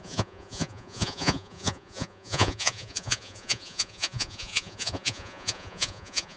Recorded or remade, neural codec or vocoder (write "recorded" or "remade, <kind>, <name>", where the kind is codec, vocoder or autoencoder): remade, vocoder, Vocos